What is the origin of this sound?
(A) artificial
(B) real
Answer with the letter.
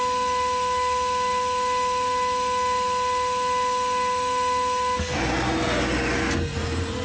B